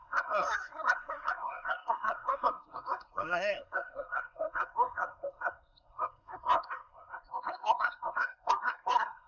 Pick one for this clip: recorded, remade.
remade